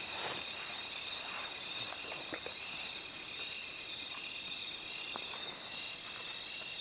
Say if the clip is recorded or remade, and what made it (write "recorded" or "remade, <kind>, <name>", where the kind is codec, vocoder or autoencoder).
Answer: recorded